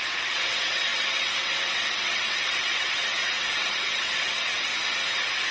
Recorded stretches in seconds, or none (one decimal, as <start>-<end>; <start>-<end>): 4.7-5.5